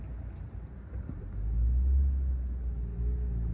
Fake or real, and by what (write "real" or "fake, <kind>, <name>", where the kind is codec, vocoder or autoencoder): real